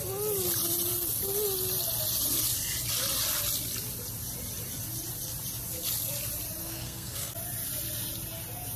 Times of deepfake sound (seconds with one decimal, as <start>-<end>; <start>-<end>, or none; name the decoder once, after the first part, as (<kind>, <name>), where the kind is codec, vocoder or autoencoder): 6.6-7.3 (codec, SNAC)